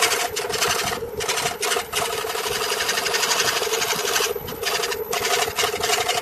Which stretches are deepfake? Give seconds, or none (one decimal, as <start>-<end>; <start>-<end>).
none